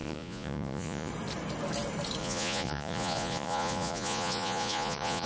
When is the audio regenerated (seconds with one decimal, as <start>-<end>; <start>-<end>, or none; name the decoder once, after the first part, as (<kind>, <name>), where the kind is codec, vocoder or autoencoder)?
0.0-1.1 (vocoder, Vocos); 2.2-5.3